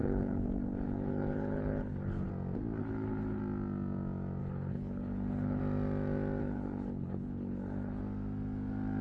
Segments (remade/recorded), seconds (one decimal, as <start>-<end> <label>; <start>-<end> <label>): 0.0-2.3 remade; 2.3-2.8 recorded; 2.8-3.4 remade; 3.4-4.4 recorded; 4.4-5.6 remade; 5.6-6.4 recorded; 6.4-8.0 remade; 8.0-9.0 recorded